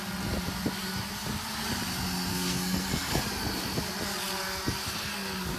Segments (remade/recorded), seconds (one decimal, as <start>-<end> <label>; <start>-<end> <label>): 0.0-2.3 recorded; 2.3-3.2 remade; 3.2-4.8 recorded; 4.8-5.6 remade